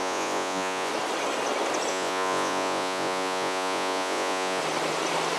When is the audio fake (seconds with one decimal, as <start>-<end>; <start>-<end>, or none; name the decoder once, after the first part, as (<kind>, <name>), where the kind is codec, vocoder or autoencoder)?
0.0-0.9 (vocoder, Vocos); 1.9-4.6